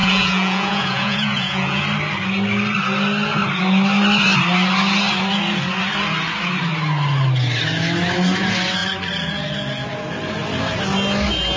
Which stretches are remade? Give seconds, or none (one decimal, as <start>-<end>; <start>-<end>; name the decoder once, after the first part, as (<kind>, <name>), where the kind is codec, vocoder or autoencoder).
0.0-1.8 (vocoder, Vocos)